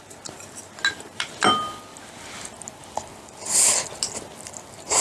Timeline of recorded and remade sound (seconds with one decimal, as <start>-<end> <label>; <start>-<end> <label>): 0.0-5.0 recorded